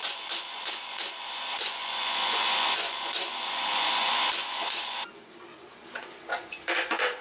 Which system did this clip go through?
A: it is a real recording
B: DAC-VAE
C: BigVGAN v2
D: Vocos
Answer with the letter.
D